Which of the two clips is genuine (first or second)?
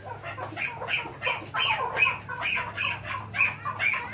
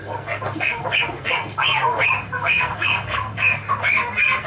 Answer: first